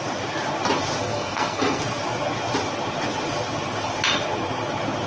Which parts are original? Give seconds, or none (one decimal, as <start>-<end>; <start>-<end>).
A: 0.0-1.0; 1.8-5.1